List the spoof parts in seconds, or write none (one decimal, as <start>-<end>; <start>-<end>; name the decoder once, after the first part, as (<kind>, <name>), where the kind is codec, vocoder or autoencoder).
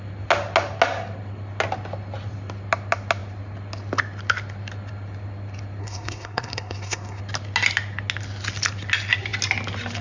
5.8-7.2 (codec, SNAC)